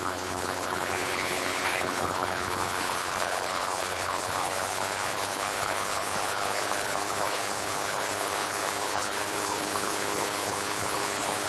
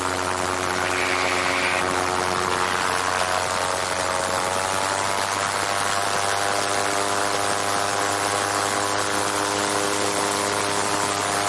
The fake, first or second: first